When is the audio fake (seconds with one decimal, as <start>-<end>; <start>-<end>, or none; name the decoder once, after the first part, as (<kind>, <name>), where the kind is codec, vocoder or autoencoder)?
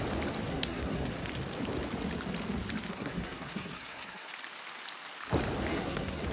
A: 0.5-1.1 (codec, SNAC); 2.9-4.3; 5.7-6.3